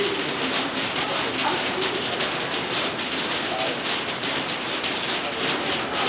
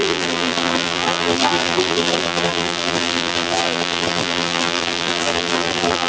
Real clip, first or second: first